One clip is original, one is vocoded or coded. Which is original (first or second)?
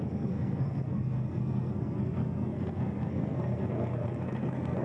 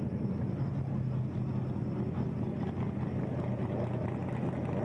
second